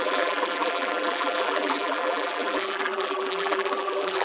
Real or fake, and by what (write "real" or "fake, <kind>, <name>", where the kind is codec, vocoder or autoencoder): fake, vocoder, BigVGAN v2